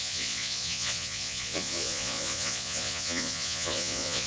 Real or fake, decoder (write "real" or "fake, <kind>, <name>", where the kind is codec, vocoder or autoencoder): fake, vocoder, Vocos